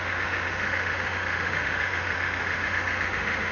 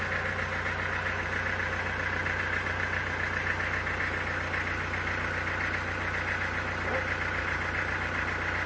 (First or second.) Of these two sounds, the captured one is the second